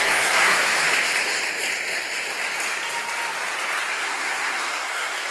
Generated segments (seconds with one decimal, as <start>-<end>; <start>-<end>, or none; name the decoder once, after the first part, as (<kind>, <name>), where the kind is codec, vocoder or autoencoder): 0.0-0.7 (codec, SNAC); 3.9-5.3